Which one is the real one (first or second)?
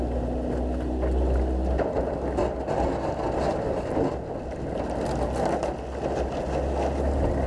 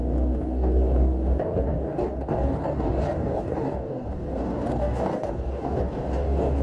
first